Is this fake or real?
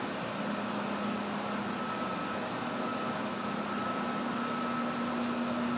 real